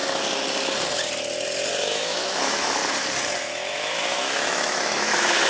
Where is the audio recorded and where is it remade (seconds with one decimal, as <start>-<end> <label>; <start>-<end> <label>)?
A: 0.0-1.8 recorded; 1.8-2.8 remade; 2.8-3.4 recorded; 3.4-5.5 remade